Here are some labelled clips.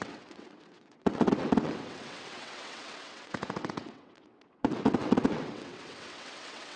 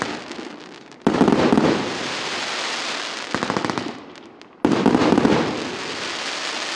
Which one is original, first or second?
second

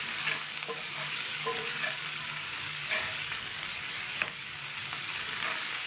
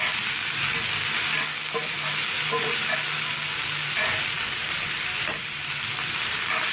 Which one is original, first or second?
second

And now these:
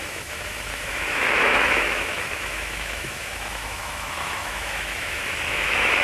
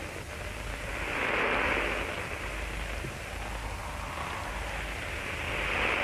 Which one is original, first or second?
second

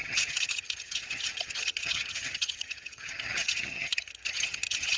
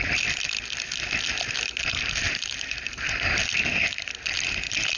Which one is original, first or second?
second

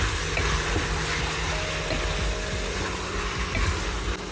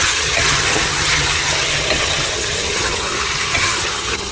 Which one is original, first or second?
first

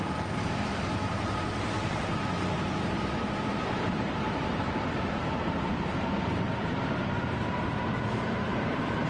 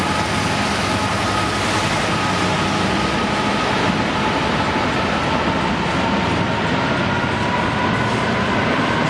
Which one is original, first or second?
second